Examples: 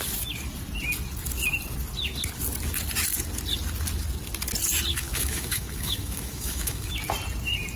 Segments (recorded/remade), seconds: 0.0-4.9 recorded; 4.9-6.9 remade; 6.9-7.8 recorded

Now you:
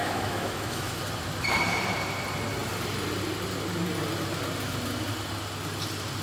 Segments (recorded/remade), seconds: 0.0-1.0 remade; 1.0-6.2 recorded

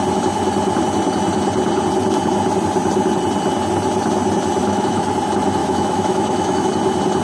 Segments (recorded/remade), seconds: 0.0-4.6 recorded; 4.6-5.1 remade; 5.1-5.6 recorded; 5.6-6.7 remade; 6.7-7.2 recorded

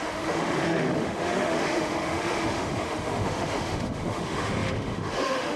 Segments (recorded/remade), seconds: 0.0-5.6 remade

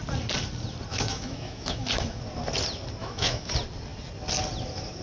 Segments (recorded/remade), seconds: 0.0-0.9 recorded; 0.9-2.2 remade; 2.2-3.0 recorded; 3.0-3.5 remade; 3.5-5.0 recorded